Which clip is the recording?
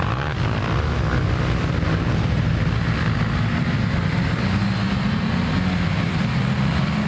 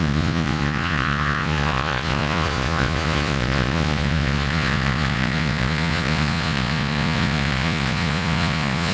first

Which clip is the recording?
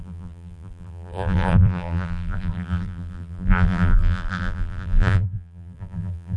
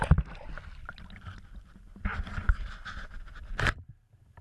second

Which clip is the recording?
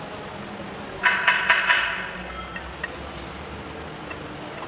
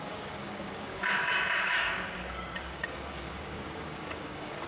first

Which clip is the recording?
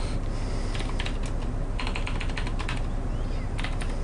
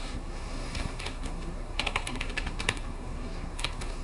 first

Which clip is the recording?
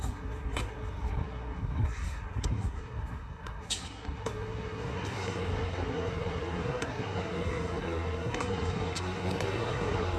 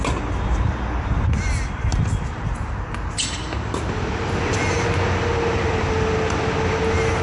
second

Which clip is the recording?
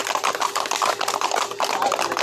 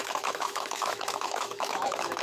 first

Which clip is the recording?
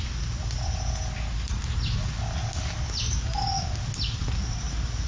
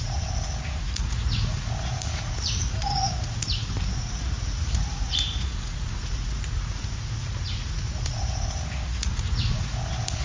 first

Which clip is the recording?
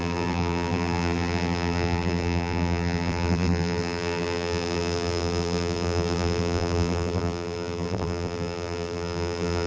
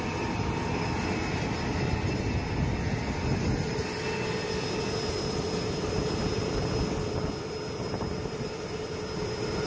second